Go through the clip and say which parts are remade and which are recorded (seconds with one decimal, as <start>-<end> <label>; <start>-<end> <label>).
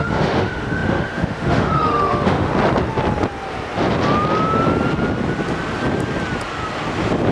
0.0-2.5 remade; 2.5-7.3 recorded